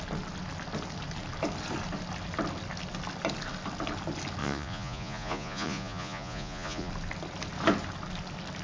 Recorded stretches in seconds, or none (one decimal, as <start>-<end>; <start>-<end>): 0.0-4.4; 6.9-8.6

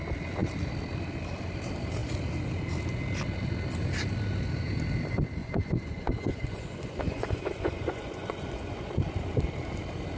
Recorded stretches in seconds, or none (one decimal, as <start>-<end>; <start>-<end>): 0.0-5.4; 8.9-10.2